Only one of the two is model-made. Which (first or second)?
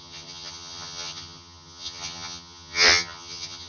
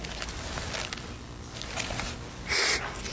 first